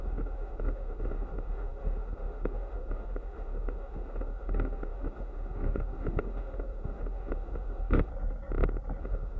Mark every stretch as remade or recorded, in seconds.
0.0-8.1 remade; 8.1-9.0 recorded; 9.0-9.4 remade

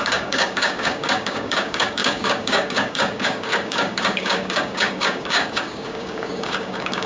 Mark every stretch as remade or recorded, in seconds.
0.0-7.1 remade

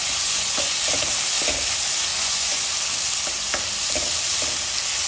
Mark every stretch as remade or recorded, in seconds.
0.0-0.8 remade; 0.8-2.1 recorded; 2.1-2.7 remade; 2.7-5.1 recorded

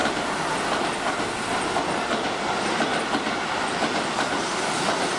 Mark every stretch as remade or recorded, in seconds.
0.0-5.2 recorded

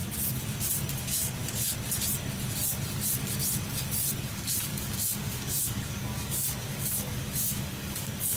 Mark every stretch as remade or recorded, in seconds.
0.0-0.9 recorded; 0.9-1.4 remade; 1.4-4.2 recorded; 4.2-8.4 remade